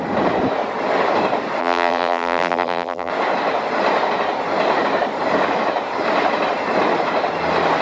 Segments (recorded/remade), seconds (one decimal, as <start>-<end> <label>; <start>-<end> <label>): 0.0-1.6 recorded; 1.6-3.1 remade; 3.1-7.8 recorded